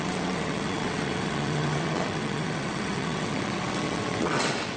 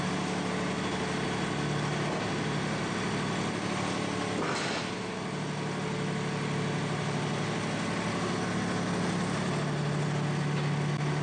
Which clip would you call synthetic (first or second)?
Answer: first